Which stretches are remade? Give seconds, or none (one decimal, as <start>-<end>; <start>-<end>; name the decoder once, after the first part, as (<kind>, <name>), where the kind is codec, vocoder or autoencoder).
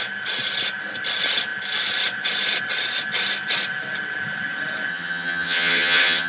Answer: 4.9-6.3 (vocoder, HiFi-GAN)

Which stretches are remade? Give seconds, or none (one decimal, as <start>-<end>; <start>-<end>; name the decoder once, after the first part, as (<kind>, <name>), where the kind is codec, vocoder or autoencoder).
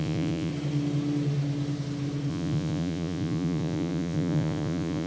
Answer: 0.0-0.5 (vocoder, Vocos); 2.3-5.1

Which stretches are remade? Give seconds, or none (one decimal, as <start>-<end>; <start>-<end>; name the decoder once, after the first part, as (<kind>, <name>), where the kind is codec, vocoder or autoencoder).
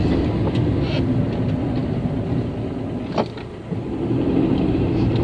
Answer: none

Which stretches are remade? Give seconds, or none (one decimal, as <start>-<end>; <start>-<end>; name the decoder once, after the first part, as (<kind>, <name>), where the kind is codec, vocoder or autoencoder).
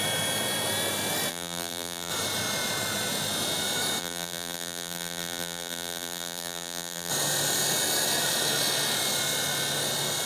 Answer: 1.3-2.1 (vocoder, BigVGAN v2); 4.0-7.1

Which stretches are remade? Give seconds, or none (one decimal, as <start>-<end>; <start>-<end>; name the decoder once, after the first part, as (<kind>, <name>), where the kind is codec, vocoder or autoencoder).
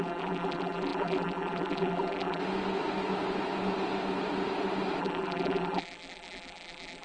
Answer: 0.0-2.4 (vocoder, BigVGAN v2); 5.0-7.0